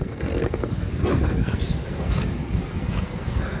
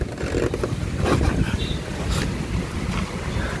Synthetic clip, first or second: first